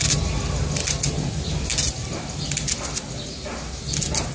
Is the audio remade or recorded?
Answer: recorded